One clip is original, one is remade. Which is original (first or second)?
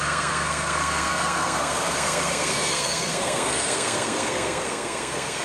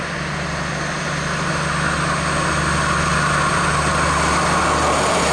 second